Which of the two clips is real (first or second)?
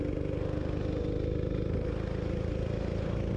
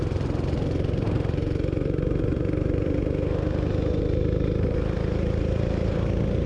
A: first